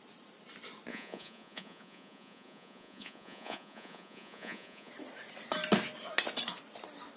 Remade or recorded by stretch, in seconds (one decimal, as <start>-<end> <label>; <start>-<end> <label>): 0.0-0.9 recorded; 0.9-4.9 remade; 4.9-7.2 recorded